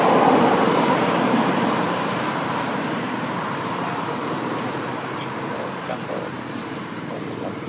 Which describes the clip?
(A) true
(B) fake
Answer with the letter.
B